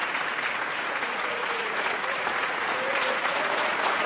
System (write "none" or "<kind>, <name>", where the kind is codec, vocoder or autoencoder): vocoder, Vocos